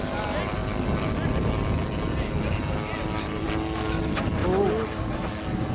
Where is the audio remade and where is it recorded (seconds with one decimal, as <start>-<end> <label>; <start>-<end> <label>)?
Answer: 0.0-5.7 recorded